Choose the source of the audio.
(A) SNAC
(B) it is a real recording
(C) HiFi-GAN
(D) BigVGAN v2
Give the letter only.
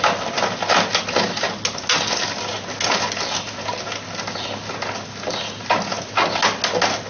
B